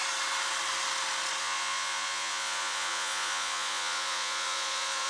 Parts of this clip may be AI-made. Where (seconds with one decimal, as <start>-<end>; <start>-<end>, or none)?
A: 1.4-5.1